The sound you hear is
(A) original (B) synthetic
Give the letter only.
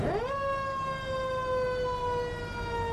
A